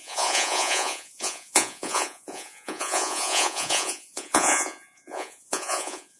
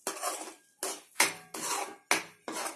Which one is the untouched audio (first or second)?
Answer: second